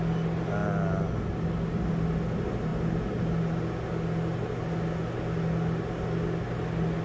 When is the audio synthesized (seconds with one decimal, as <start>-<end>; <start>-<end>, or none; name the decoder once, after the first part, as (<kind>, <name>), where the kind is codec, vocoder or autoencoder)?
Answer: none